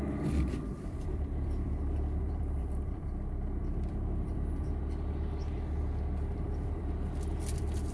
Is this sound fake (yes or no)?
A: yes